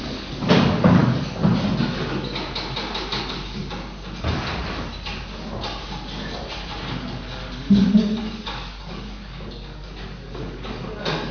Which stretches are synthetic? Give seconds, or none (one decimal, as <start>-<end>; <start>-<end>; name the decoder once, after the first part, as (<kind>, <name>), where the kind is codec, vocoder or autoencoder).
0.0-1.0 (codec, DAC); 3.2-3.6; 7.0-11.3